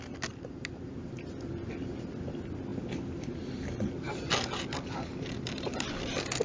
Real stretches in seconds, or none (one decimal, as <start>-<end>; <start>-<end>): 0.0-2.7; 4.3-6.4